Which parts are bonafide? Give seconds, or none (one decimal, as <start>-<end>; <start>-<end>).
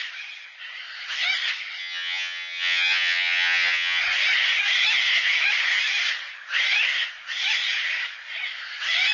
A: 0.0-1.8; 4.0-9.1